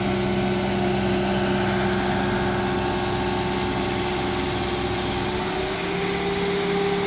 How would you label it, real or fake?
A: real